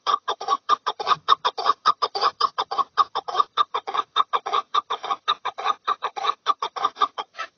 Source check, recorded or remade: remade